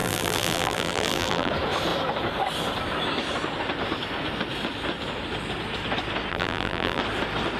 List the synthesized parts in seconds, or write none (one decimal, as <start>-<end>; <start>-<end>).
0.0-1.5; 6.3-7.0